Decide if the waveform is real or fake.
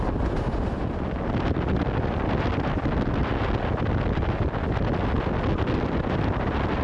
real